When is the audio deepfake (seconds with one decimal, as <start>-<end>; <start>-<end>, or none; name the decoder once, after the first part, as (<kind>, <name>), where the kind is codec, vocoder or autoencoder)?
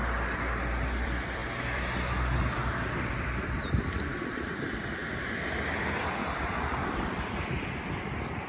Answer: 0.0-8.5 (vocoder, BigVGAN v2)